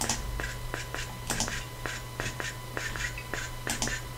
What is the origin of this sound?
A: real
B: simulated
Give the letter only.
A